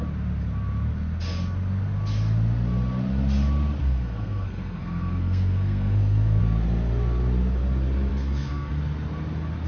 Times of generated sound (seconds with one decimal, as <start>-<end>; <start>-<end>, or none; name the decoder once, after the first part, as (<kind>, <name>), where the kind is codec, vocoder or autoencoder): 3.8-6.4 (codec, SNAC); 8.1-8.7